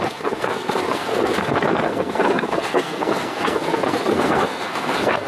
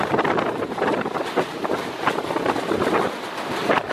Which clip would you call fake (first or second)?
first